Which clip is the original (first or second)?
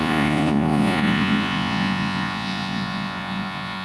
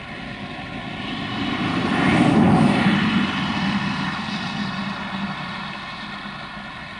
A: second